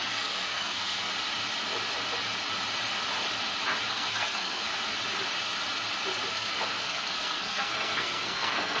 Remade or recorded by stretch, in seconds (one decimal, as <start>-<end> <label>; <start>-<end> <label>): 0.0-1.1 remade; 1.1-3.9 recorded; 3.9-4.7 remade; 4.7-6.3 recorded; 6.3-8.8 remade